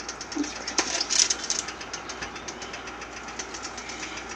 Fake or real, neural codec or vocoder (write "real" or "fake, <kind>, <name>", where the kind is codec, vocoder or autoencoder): real